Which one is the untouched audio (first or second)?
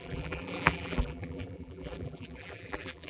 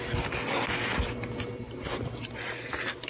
second